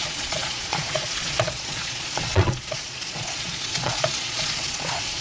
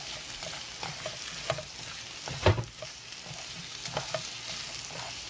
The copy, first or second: first